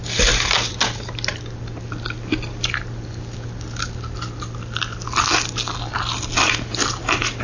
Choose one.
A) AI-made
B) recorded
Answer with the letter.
B